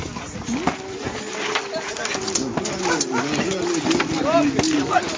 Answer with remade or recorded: recorded